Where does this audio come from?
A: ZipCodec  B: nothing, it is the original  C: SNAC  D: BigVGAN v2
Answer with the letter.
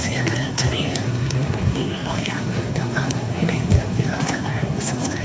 C